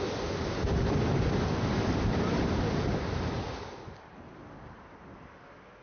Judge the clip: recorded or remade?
recorded